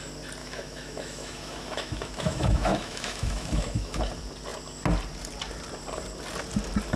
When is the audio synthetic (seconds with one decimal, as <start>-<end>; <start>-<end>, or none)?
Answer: 0.4-4.0